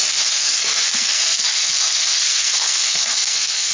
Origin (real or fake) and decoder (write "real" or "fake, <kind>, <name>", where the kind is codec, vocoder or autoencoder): fake, codec, SNAC